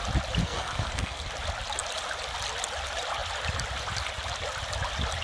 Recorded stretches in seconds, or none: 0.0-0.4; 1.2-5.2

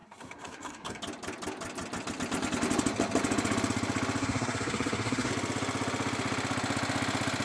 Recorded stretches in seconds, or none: 1.0-4.2; 5.3-7.4

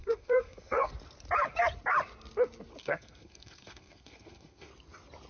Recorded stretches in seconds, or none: 0.9-2.8; 4.7-5.3